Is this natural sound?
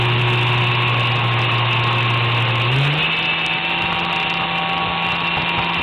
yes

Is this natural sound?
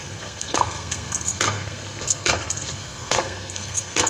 no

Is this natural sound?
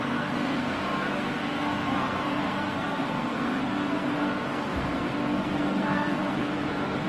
no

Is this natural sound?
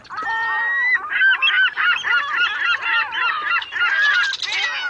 yes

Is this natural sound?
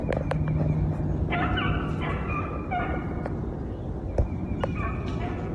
yes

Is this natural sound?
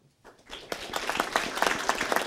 yes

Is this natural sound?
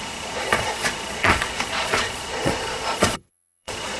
no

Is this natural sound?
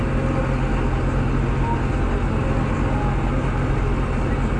yes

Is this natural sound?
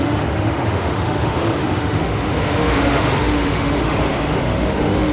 no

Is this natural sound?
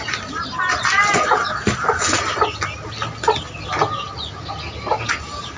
yes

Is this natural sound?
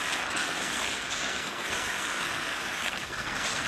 no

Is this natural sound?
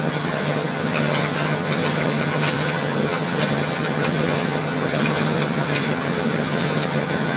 no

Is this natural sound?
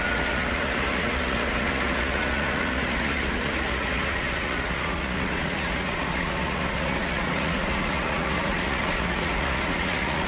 no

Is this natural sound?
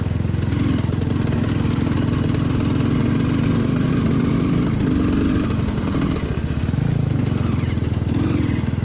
yes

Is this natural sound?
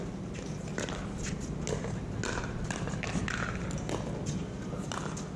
yes